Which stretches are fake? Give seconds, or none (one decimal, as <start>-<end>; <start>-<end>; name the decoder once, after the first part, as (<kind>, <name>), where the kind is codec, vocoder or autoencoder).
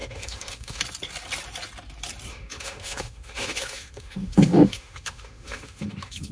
0.0-0.8 (autoencoder, DAC-VAE); 2.3-6.3